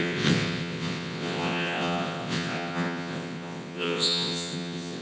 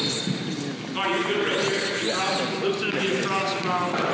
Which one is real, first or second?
second